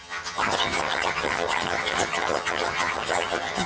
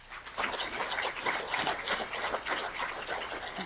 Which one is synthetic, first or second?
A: first